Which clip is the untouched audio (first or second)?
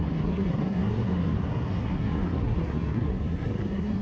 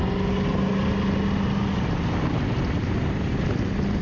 second